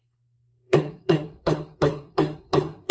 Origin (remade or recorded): remade